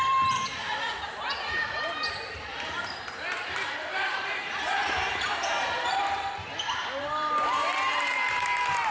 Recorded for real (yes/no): no